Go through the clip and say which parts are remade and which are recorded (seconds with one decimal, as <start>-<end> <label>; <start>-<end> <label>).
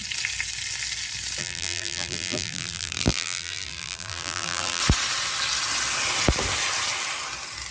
0.0-1.4 recorded; 1.4-4.8 remade; 4.8-7.7 recorded